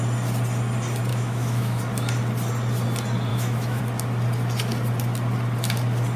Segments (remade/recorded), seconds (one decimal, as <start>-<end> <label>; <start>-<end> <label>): 0.0-1.1 recorded; 1.1-1.8 remade; 1.8-3.3 recorded; 3.3-3.8 remade; 3.8-6.2 recorded

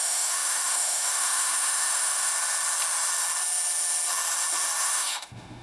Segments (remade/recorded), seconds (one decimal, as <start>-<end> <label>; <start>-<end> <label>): 0.0-2.3 remade; 2.3-4.8 recorded; 4.8-5.6 remade